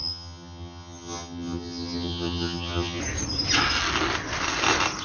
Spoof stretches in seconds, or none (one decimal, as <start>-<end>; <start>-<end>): 0.0-3.0